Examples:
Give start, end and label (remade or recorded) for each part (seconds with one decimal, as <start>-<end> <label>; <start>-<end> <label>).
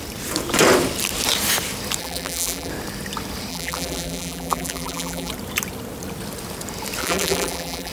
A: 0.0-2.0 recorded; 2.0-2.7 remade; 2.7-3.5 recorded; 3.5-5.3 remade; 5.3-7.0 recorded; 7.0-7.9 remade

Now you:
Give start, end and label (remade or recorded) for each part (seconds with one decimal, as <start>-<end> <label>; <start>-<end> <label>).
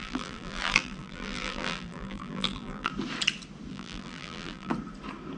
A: 0.0-2.9 remade; 2.9-3.7 recorded; 3.7-4.7 remade; 4.7-5.4 recorded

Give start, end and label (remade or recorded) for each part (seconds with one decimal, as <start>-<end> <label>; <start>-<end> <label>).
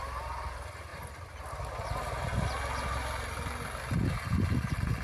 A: 0.0-0.9 recorded; 0.9-1.4 remade; 1.4-5.0 recorded